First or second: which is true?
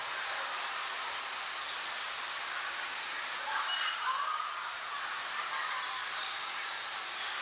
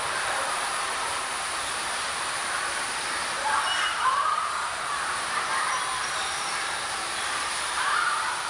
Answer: first